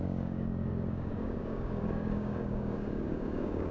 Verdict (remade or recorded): remade